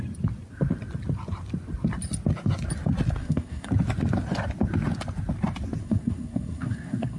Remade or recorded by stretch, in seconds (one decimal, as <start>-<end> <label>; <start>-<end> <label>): 0.0-3.2 recorded; 3.2-3.7 remade; 3.7-5.8 recorded; 5.8-7.2 remade

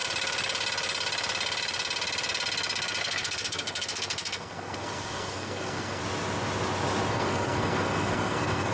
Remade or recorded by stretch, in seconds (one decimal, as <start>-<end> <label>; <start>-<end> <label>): 0.0-3.0 recorded; 3.0-6.0 remade; 6.0-7.1 recorded; 7.1-8.7 remade

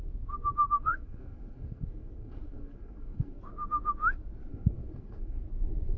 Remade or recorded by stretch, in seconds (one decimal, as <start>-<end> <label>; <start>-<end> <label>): 0.0-0.6 recorded; 0.6-3.4 remade; 3.4-4.5 recorded; 4.5-5.4 remade; 5.4-6.0 recorded

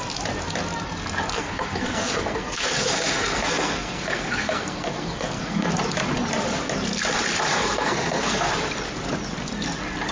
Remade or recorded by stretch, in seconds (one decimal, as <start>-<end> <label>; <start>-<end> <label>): 0.0-1.3 recorded; 1.3-5.7 remade; 5.7-7.5 recorded; 7.5-8.5 remade; 8.5-10.1 recorded

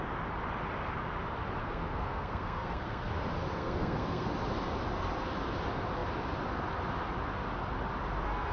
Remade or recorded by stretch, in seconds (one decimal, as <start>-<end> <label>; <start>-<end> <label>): 0.0-1.6 recorded; 1.6-3.1 remade; 3.1-3.5 recorded; 3.5-4.3 remade; 4.3-8.5 recorded